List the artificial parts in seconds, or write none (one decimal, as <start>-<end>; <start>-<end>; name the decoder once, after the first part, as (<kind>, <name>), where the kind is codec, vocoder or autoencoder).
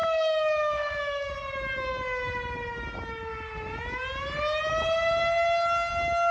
0.0-1.3 (autoencoder, DAC-VAE)